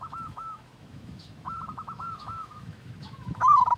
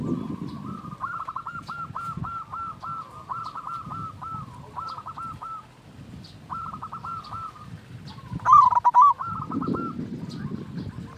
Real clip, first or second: second